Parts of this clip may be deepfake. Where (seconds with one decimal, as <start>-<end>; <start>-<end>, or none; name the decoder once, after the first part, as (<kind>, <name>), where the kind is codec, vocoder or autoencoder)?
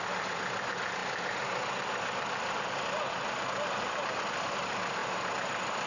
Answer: none